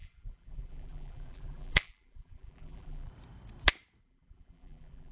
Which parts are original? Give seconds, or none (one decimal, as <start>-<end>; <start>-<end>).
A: 3.1-4.0